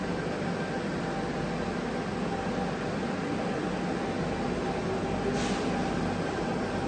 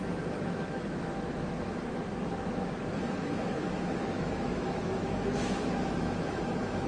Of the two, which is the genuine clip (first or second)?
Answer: first